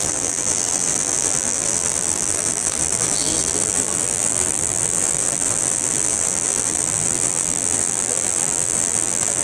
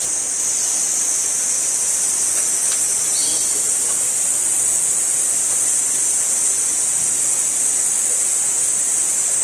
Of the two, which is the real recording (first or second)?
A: second